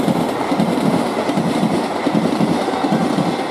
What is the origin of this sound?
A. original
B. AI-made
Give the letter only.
A